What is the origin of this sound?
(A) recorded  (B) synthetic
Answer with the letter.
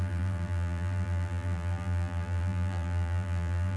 B